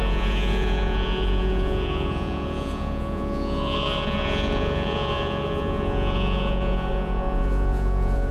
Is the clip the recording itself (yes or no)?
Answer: no